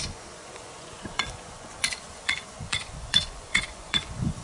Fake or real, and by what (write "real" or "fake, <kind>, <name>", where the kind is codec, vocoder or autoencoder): fake, vocoder, Vocos